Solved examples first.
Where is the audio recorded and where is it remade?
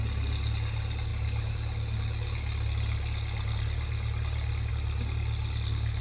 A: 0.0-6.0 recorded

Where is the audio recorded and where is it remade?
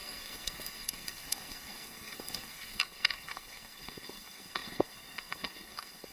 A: 0.0-6.1 remade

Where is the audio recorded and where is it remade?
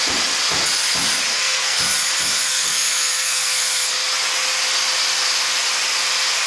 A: 0.0-1.3 recorded; 1.3-1.8 remade; 1.8-2.5 recorded; 2.5-3.9 remade; 3.9-6.5 recorded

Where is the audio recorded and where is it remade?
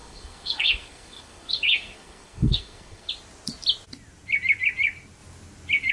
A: 0.0-3.1 remade; 3.1-5.9 recorded